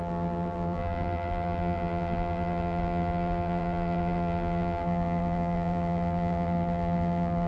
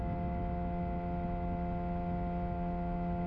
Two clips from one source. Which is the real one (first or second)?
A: second